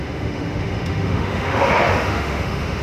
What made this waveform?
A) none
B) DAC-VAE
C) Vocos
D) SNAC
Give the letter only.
B